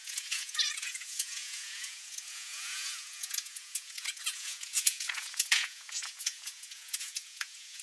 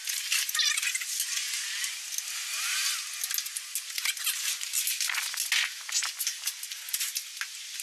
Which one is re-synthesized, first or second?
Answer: first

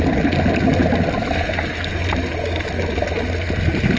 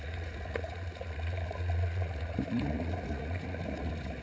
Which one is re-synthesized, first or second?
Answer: second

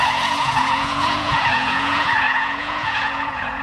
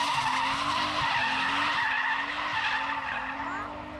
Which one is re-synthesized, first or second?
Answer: first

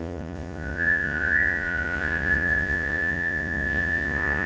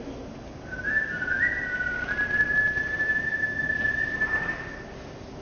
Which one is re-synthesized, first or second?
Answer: first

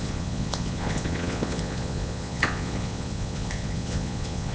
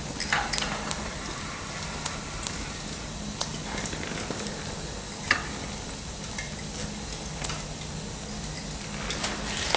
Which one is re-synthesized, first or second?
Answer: first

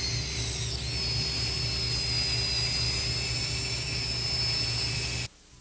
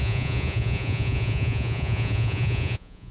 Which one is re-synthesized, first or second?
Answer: second